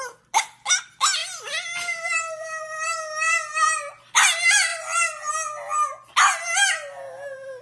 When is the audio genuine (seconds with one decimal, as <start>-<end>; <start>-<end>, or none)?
0.0-4.7; 5.3-7.6